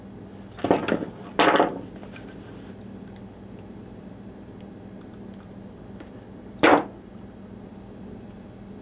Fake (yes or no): no